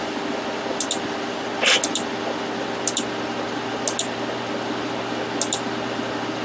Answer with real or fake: real